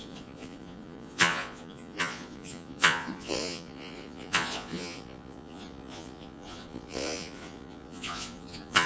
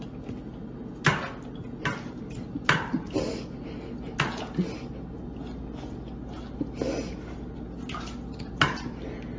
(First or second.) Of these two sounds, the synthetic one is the first